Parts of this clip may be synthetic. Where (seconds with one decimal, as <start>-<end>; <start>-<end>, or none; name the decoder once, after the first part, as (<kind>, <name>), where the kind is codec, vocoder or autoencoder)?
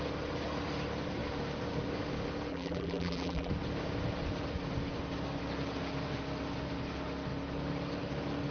2.5-3.5 (vocoder, BigVGAN v2)